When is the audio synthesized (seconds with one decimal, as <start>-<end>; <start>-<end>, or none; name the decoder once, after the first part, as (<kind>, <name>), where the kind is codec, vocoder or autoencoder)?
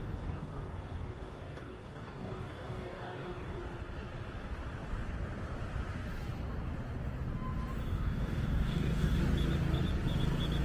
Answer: 0.0-3.6 (codec, DAC); 7.8-9.2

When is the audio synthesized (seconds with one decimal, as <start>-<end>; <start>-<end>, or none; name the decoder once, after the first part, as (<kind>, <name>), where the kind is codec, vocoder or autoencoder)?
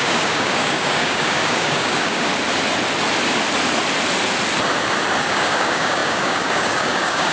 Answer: 0.0-2.3 (codec, DAC); 5.2-7.3